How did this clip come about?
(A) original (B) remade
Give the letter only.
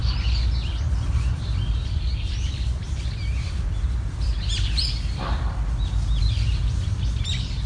A